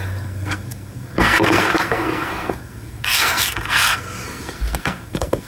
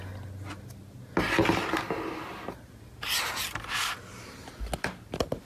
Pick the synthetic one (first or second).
first